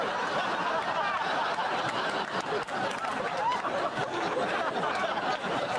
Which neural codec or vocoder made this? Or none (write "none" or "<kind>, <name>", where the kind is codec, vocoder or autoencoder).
none